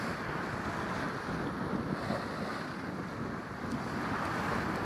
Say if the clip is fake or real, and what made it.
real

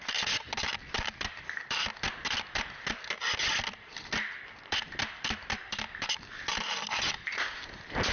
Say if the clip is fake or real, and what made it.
fake, vocoder, BigVGAN v2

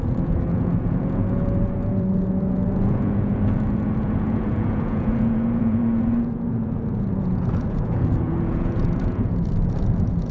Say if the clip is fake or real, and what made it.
fake, vocoder, Vocos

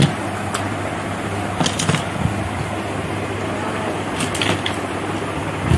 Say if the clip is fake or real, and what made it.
real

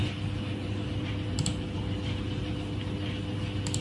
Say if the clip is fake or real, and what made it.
real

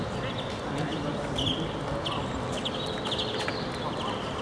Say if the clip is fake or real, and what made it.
real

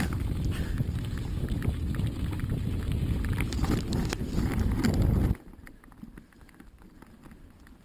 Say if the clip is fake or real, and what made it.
real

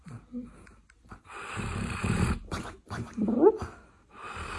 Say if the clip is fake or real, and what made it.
real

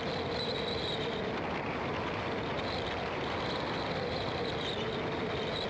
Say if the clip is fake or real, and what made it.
real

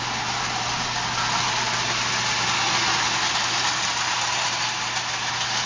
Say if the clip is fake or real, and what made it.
real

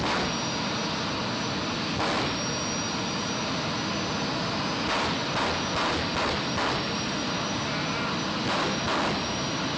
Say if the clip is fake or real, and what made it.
real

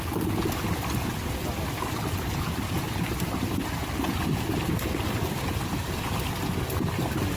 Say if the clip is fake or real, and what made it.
real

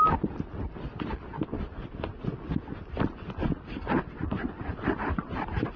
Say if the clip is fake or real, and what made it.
real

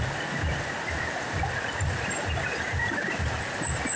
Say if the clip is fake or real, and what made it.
real